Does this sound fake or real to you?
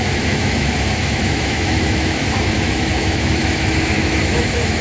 fake